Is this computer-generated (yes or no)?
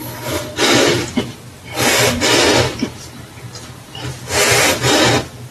no